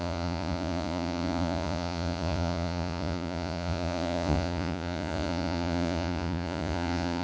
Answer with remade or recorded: remade